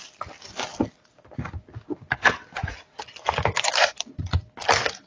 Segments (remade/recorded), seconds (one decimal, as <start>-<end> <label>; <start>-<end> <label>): 0.0-5.1 recorded